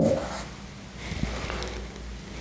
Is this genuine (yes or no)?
yes